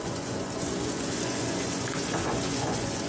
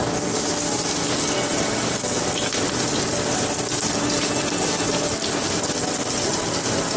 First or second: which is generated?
first